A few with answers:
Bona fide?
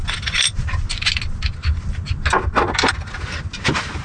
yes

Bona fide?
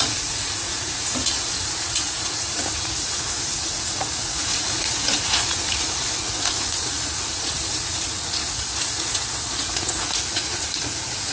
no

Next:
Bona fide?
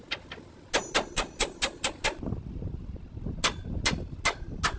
yes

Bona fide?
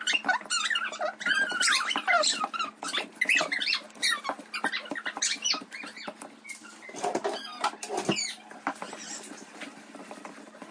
yes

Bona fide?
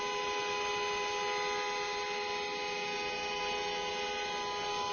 yes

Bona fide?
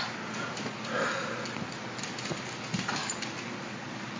yes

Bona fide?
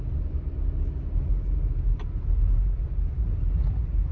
yes